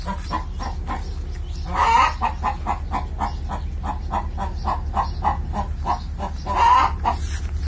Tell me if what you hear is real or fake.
real